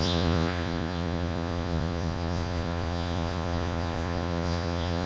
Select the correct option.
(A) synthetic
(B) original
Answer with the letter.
A